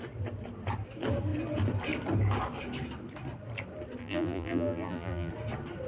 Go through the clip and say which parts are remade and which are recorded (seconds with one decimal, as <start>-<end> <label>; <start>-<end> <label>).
0.0-4.0 recorded; 4.0-5.3 remade; 5.3-5.9 recorded